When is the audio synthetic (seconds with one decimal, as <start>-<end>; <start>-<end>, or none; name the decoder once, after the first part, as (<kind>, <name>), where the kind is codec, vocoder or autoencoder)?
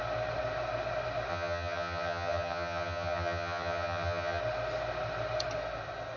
1.3-4.4 (vocoder, HiFi-GAN)